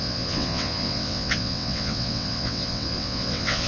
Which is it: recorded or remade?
remade